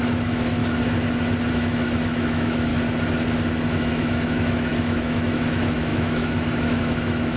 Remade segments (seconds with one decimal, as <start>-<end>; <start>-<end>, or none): 0.0-0.6; 1.5-2.7; 3.7-7.4